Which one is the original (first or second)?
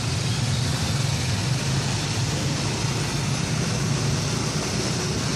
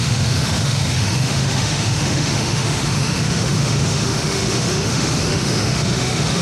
first